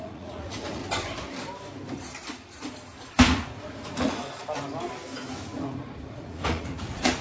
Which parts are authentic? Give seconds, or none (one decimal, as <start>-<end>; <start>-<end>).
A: 0.8-3.1; 4.2-5.3